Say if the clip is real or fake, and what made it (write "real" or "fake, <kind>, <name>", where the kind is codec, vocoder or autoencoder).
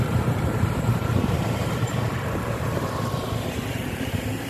fake, vocoder, BigVGAN v2